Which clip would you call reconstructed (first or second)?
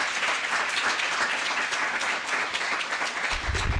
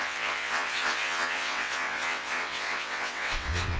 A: second